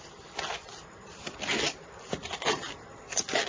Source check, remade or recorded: recorded